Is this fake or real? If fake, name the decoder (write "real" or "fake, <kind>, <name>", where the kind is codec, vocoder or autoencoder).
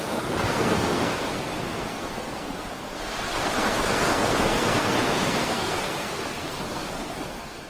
fake, codec, SNAC